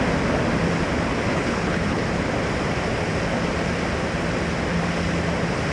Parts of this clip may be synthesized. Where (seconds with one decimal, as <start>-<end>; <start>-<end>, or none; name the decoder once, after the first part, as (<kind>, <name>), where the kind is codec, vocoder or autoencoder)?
1.3-2.0 (codec, HILCodec)